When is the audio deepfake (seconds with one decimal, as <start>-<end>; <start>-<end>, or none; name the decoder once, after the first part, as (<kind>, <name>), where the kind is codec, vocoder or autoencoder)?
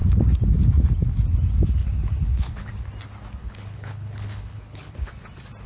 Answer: 1.8-2.7 (codec, HILCodec); 3.4-5.1